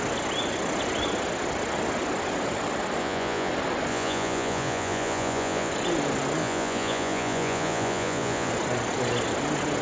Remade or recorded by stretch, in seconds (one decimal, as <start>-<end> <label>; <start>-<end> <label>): 0.0-3.0 recorded; 3.0-3.5 remade; 3.5-3.9 recorded; 3.9-5.7 remade; 5.7-6.4 recorded; 6.4-8.5 remade; 8.5-9.8 recorded